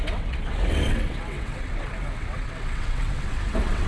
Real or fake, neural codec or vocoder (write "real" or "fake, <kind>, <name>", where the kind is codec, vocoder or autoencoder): fake, vocoder, WaveNeXt